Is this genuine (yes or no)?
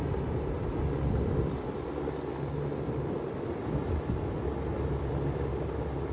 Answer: yes